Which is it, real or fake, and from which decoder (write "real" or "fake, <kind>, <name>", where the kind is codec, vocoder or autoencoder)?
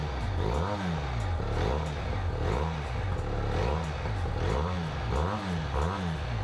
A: real